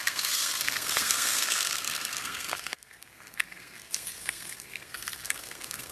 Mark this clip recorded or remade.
remade